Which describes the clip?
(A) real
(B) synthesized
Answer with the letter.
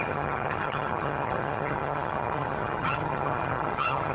B